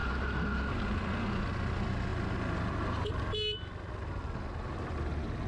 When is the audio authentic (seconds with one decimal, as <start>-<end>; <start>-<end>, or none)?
0.0-5.5